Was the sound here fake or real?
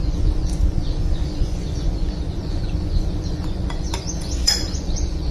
fake